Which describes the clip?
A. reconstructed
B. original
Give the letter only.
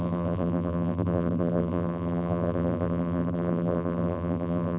A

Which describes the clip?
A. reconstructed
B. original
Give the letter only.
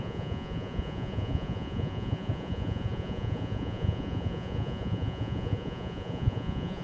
A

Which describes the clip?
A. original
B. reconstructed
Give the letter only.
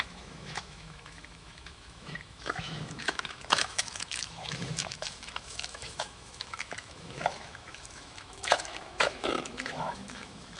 B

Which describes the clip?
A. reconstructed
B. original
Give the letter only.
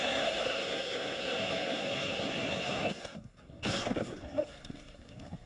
A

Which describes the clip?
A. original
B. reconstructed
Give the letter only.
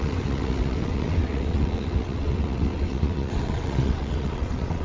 B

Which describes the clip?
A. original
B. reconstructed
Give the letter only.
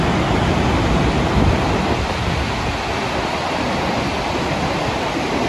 A